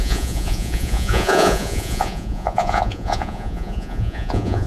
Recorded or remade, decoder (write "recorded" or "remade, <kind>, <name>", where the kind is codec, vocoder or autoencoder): remade, vocoder, Vocos